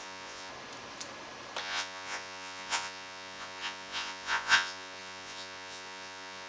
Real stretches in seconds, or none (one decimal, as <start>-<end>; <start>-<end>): 0.5-1.6